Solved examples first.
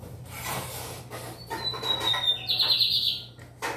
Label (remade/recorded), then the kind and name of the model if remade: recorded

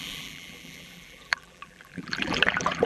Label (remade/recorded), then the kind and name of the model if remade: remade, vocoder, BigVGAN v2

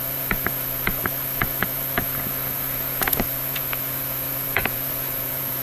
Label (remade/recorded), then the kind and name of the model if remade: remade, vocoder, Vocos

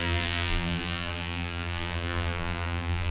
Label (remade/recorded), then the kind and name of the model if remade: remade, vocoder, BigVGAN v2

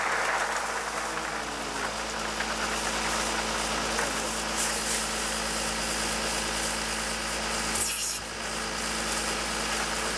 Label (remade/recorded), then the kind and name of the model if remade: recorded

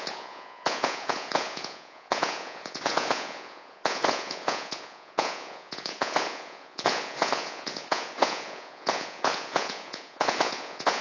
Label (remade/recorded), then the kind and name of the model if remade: remade, vocoder, Vocos